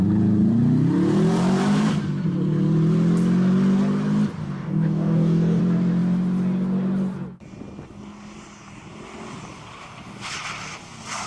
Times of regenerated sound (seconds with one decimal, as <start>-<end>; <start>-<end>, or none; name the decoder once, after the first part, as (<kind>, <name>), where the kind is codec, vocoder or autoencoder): 4.4-5.6 (codec, DAC)